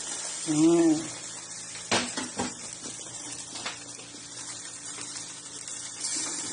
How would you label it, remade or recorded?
recorded